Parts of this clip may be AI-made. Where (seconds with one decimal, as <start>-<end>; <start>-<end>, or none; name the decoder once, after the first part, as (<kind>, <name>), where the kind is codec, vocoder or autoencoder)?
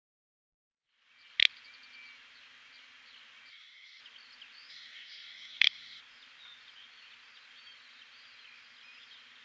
3.5-4.0 (codec, SNAC); 4.7-6.0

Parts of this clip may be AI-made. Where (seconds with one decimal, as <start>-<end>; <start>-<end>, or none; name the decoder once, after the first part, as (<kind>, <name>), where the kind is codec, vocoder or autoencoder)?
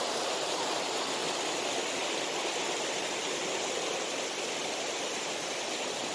0.0-1.2 (vocoder, BigVGAN v2); 4.9-6.1